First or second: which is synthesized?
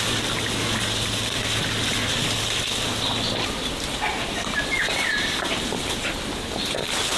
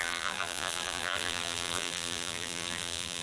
second